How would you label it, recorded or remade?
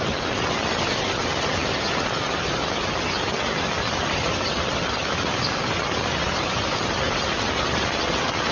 recorded